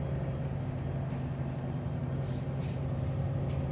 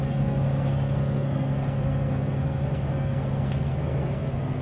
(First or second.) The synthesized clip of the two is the second